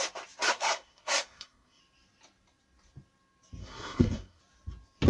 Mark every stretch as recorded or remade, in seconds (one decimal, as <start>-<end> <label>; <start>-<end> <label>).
0.0-0.5 recorded; 0.5-1.8 remade; 1.8-3.6 recorded; 3.6-4.4 remade; 4.4-5.1 recorded

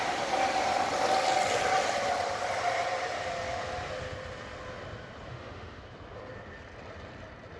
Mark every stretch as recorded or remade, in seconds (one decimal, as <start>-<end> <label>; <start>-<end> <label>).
0.0-5.3 recorded; 5.3-5.8 remade; 5.8-7.6 recorded

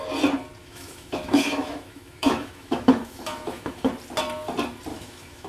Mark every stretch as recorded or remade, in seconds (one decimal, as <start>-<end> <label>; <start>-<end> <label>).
0.0-0.6 recorded; 0.6-3.9 remade; 3.9-4.9 recorded; 4.9-5.5 remade

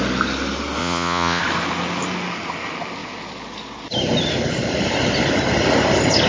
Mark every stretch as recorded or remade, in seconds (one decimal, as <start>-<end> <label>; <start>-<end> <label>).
0.0-0.8 recorded; 0.8-1.4 remade; 1.4-6.3 recorded

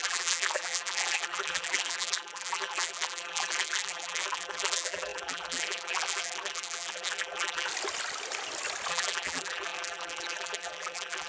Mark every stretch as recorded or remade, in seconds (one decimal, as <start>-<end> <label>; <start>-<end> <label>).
0.0-7.7 remade; 7.7-8.9 recorded; 8.9-11.3 remade